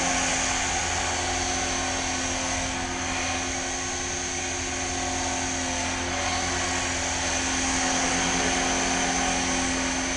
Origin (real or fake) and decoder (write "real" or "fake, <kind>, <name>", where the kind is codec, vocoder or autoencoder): real